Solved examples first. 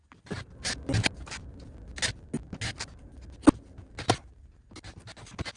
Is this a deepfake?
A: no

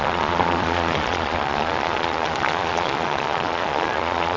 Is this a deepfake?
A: yes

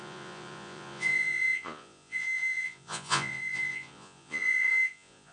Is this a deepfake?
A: yes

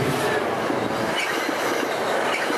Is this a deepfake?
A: no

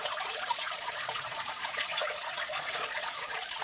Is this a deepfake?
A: yes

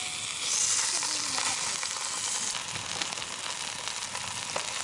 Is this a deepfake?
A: no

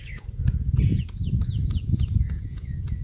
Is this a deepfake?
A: yes